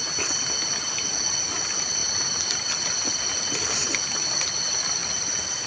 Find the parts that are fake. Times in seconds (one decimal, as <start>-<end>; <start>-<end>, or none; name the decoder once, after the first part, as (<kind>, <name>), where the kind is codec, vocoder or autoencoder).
none